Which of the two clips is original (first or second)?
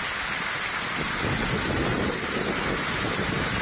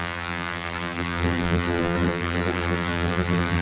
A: first